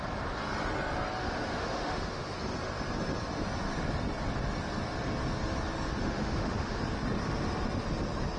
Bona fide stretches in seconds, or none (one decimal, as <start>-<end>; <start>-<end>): 0.0-1.2; 2.4-6.0; 6.8-8.4